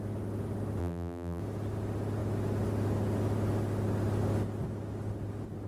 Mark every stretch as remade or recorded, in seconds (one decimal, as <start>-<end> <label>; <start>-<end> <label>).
0.0-0.8 recorded; 0.8-1.4 remade; 1.4-5.7 recorded